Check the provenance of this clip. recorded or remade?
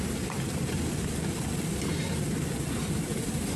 recorded